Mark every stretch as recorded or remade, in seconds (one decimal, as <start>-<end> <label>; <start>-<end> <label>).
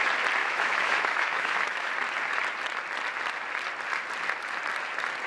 0.0-0.4 recorded; 0.4-1.9 remade; 1.9-5.3 recorded